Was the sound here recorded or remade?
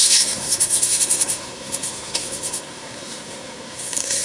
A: remade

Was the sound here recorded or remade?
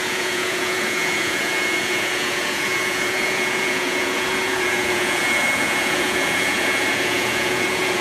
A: remade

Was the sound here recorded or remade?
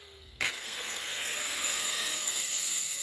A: remade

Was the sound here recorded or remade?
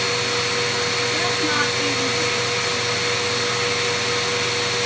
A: recorded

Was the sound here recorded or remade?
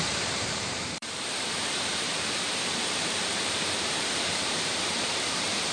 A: remade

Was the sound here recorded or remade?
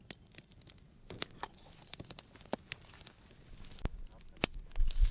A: recorded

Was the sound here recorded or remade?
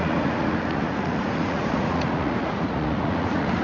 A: remade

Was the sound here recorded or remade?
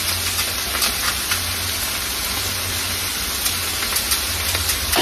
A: recorded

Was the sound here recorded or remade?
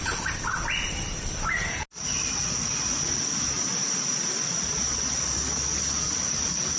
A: recorded